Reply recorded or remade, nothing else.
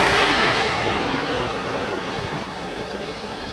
remade